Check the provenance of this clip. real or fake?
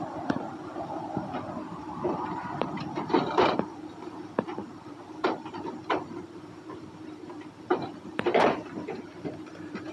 fake